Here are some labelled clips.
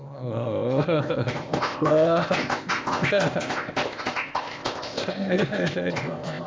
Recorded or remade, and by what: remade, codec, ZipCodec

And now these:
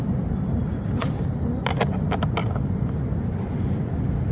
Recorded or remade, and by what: recorded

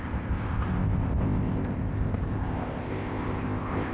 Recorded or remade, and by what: remade, codec, ZipCodec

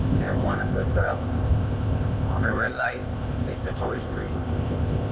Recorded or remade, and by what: remade, codec, ZipCodec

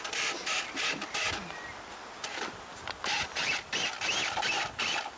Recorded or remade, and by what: recorded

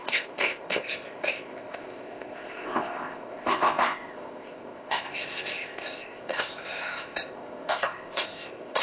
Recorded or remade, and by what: remade, codec, ZipCodec